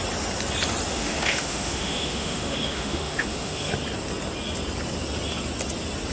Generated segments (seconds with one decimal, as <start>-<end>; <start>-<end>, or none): 0.9-3.7